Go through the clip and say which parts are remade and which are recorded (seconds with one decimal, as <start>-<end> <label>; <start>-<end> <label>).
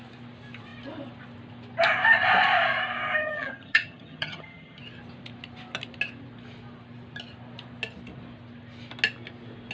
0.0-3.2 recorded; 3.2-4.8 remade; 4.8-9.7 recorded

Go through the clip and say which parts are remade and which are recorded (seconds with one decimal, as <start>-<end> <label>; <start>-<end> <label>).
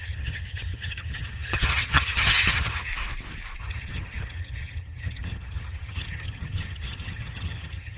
0.0-2.9 remade; 2.9-3.6 recorded; 3.6-8.0 remade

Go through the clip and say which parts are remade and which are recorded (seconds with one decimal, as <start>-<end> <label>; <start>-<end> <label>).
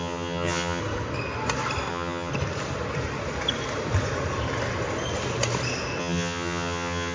0.0-0.8 remade; 0.8-1.9 recorded; 1.9-2.3 remade; 2.3-6.0 recorded; 6.0-7.1 remade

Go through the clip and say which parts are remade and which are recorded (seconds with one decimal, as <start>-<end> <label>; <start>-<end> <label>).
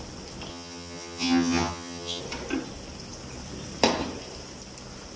0.0-0.5 recorded; 0.5-2.2 remade; 2.2-5.2 recorded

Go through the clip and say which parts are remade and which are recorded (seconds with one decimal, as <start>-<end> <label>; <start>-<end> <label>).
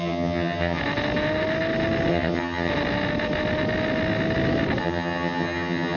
0.0-0.8 remade; 0.8-2.1 recorded; 2.1-2.7 remade; 2.7-4.8 recorded; 4.8-6.0 remade